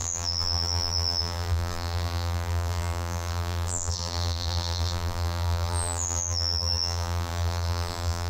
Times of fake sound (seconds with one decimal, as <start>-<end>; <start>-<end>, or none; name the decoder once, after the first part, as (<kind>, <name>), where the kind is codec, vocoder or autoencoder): 0.0-8.3 (vocoder, BigVGAN v2)